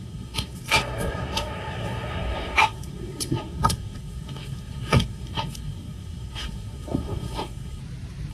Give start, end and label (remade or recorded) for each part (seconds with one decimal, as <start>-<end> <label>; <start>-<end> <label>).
0.0-7.8 remade; 7.8-8.3 recorded